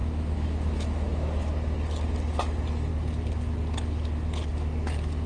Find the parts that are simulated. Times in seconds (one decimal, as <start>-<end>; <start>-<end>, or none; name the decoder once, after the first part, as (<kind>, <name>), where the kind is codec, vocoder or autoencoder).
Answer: 0.0-1.5 (autoencoder, DAC-VAE)